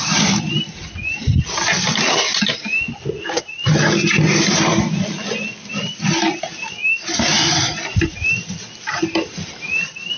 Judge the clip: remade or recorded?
recorded